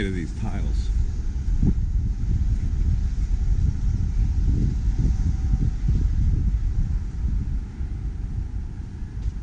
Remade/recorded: recorded